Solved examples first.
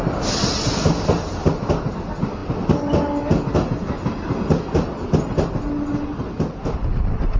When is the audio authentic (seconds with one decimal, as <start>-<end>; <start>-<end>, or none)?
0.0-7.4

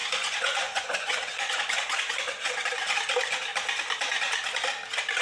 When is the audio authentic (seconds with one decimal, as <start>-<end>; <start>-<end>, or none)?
2.9-5.2

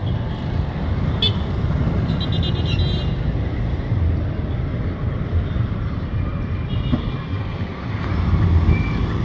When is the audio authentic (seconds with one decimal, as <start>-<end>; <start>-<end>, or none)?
0.0-9.2

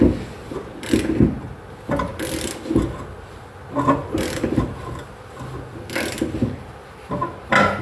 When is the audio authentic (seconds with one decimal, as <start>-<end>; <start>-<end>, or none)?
0.0-4.0; 5.1-7.8

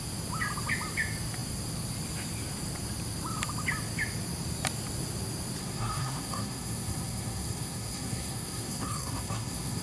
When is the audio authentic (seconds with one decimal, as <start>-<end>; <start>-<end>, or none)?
0.0-5.6